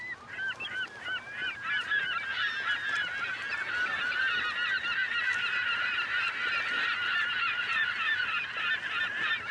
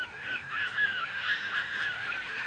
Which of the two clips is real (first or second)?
first